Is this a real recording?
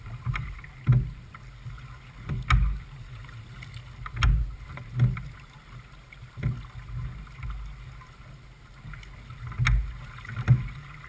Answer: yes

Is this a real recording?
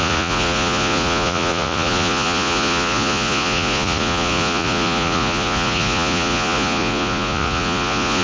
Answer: no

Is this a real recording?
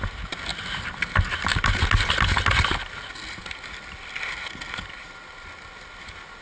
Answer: yes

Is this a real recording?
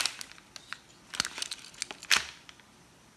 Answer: yes